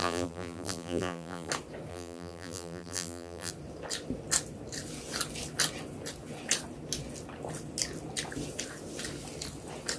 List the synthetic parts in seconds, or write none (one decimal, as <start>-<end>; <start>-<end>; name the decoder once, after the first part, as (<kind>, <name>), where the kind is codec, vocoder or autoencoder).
0.0-1.5 (vocoder, BigVGAN v2); 1.9-3.5